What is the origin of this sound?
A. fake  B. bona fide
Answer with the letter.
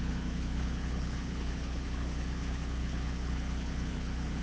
A